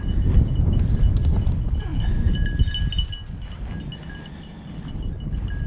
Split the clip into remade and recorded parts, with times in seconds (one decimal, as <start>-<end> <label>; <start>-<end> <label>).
0.0-5.7 recorded